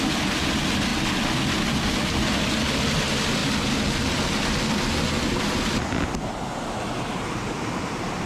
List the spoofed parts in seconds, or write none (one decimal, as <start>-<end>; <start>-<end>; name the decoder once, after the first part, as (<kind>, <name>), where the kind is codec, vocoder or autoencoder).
none